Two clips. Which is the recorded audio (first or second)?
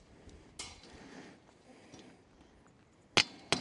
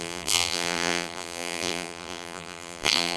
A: first